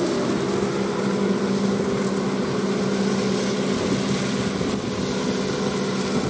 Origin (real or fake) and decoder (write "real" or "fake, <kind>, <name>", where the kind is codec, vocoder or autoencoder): real